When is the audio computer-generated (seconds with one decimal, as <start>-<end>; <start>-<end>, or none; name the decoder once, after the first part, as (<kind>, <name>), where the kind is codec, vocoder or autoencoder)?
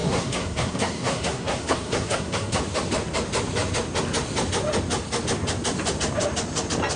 0.0-2.6 (codec, SNAC)